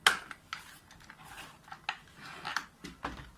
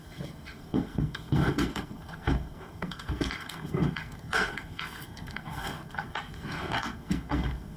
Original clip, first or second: first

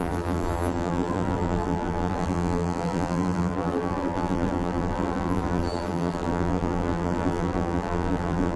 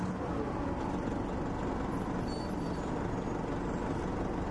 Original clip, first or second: second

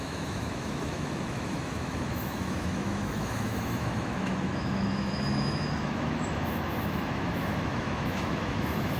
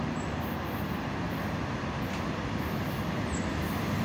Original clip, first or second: second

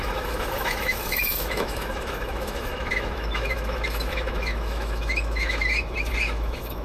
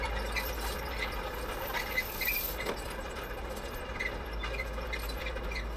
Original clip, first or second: second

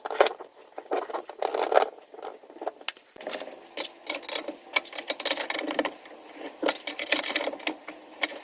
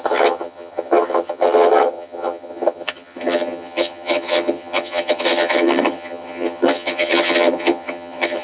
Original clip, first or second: first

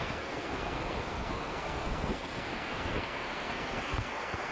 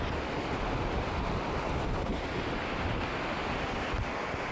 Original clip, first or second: second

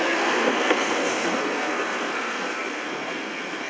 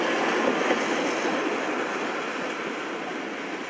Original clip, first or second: second